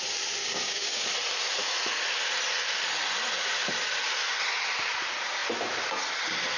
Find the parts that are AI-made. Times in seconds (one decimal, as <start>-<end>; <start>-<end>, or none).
0.4-1.0